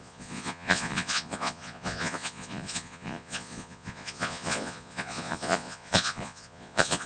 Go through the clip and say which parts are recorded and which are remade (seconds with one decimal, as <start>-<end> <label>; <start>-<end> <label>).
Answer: 0.0-7.1 remade